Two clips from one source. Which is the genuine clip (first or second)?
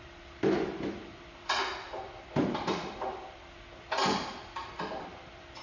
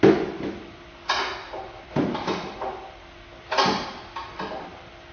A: second